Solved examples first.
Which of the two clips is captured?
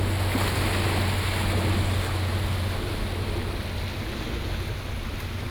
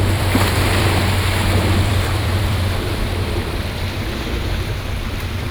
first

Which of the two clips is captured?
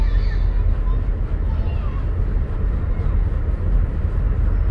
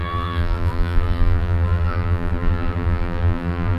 first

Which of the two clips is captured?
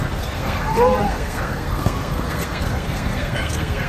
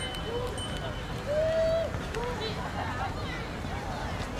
second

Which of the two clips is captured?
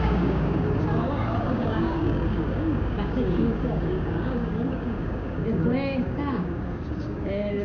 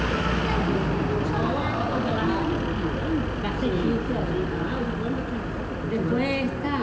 second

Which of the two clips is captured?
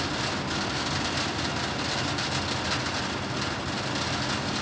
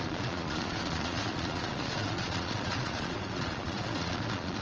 first